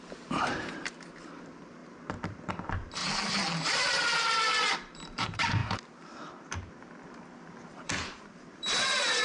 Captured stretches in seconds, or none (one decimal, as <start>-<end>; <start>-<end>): none